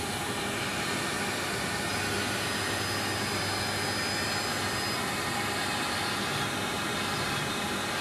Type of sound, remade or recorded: recorded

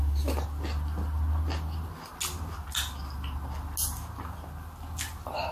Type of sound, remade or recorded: recorded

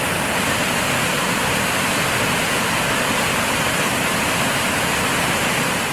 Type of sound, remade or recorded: recorded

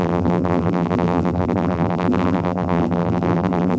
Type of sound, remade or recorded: remade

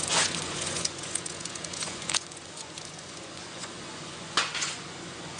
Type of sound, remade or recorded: remade